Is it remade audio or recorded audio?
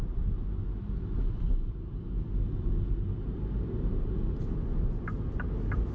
recorded